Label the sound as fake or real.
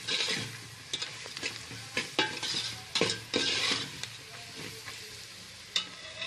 real